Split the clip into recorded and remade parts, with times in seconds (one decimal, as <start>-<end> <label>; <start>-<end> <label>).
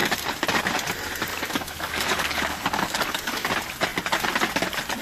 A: 0.0-1.3 recorded; 1.3-3.5 remade; 3.5-5.0 recorded